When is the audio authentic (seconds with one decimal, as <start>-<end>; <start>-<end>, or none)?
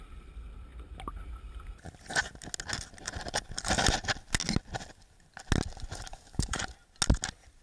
0.0-6.1; 6.6-7.6